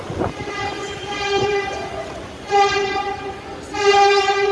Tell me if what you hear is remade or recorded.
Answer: remade